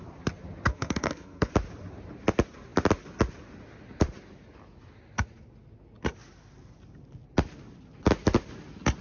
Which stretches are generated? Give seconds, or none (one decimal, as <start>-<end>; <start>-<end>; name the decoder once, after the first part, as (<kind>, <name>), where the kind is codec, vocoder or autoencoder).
0.7-1.5 (codec, SNAC)